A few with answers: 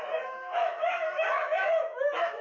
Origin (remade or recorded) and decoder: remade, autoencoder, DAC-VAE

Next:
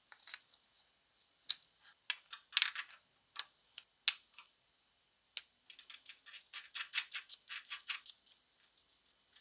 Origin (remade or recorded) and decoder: recorded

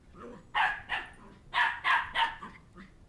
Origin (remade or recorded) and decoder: recorded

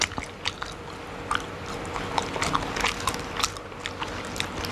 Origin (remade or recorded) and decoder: recorded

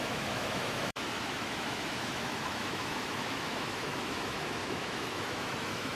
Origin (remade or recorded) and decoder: remade, autoencoder, DAC-VAE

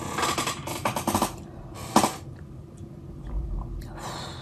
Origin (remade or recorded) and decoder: recorded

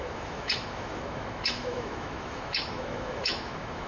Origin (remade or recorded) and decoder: remade, autoencoder, DAC-VAE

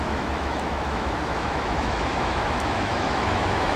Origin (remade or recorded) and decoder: remade, autoencoder, DAC-VAE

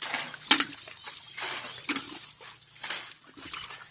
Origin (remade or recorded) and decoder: recorded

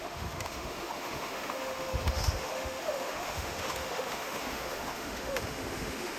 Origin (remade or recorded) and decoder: remade, autoencoder, DAC-VAE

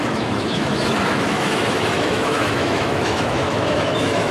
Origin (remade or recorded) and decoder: remade, autoencoder, DAC-VAE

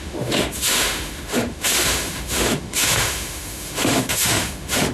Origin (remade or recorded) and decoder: remade, autoencoder, DAC-VAE